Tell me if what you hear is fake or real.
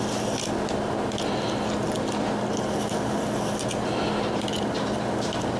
real